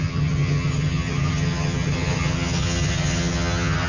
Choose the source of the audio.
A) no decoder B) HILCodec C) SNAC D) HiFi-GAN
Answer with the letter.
D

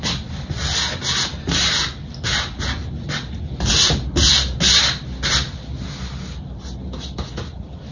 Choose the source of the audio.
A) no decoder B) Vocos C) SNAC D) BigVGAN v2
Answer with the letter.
A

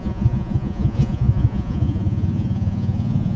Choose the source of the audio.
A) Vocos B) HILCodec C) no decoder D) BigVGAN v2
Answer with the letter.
A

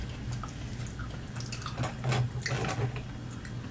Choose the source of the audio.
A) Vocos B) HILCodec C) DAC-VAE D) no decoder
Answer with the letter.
D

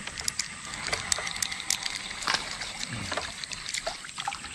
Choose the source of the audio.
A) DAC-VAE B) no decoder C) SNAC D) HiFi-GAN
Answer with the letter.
B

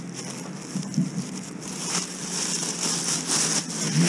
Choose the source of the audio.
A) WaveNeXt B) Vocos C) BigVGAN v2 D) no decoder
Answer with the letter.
D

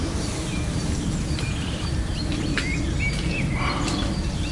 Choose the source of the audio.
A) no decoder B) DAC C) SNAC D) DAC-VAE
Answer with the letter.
A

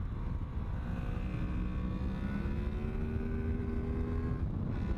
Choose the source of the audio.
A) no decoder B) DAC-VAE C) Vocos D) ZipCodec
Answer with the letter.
A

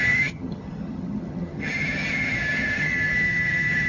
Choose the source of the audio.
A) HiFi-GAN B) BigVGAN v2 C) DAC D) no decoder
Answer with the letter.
A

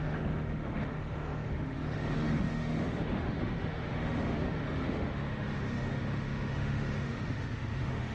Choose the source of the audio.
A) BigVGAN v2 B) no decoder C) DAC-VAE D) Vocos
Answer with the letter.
C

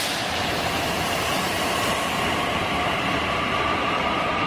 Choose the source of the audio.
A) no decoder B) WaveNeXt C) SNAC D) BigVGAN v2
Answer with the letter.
D